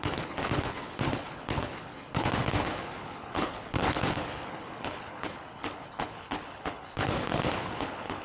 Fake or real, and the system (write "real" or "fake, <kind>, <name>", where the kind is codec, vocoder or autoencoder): fake, codec, HILCodec